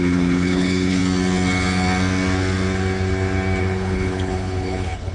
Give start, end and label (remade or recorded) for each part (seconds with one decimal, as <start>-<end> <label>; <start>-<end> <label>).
0.0-1.0 remade; 1.0-3.6 recorded; 3.6-5.1 remade